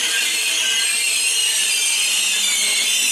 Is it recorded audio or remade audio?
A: recorded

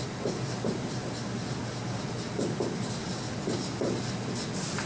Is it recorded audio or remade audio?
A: recorded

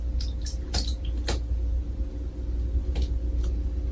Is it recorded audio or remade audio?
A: recorded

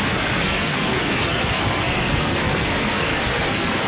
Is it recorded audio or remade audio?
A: remade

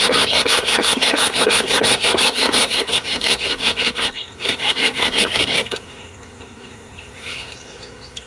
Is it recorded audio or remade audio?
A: remade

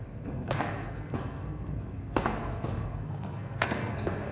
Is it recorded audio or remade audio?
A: remade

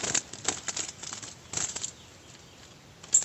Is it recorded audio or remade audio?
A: recorded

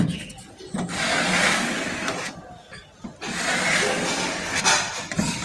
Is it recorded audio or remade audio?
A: recorded